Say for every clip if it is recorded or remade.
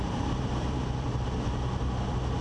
remade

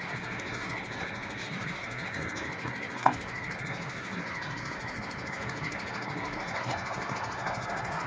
remade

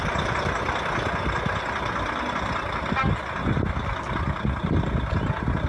recorded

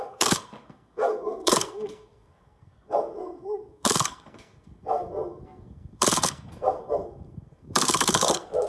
remade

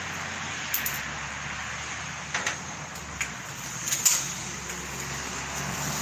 recorded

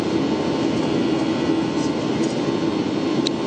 recorded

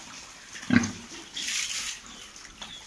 recorded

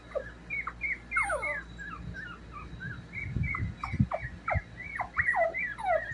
recorded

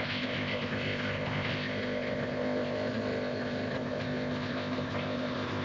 remade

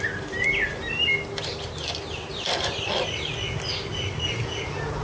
recorded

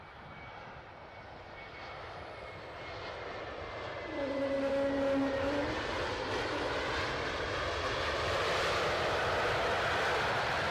recorded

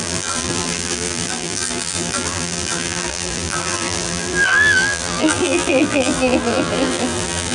remade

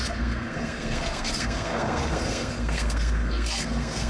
remade